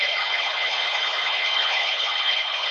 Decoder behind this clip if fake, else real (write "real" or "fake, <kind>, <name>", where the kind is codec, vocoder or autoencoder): fake, codec, HILCodec